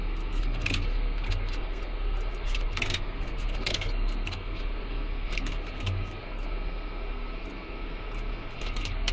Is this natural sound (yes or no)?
no